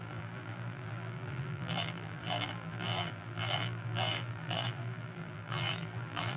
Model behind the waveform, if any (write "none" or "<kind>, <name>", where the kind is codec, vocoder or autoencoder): vocoder, BigVGAN v2